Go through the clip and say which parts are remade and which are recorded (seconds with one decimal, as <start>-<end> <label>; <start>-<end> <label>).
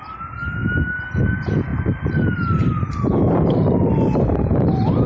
0.0-1.7 recorded; 1.7-5.1 remade